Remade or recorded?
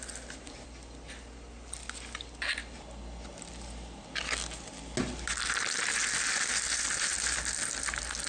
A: recorded